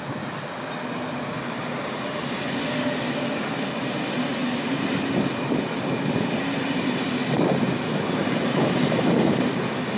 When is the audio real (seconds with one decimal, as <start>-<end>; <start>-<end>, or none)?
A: 0.0-10.0